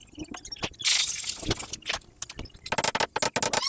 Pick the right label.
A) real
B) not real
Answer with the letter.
A